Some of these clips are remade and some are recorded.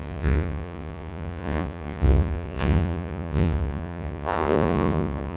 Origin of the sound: remade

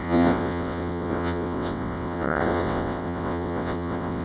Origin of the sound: remade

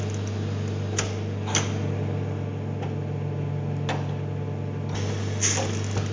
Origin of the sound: recorded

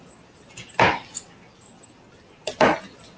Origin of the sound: recorded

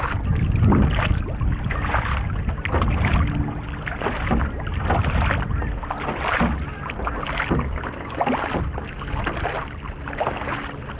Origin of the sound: recorded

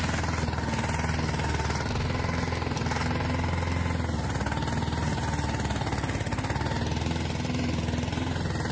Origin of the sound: recorded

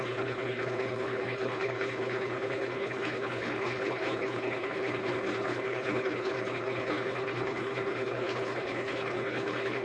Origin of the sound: remade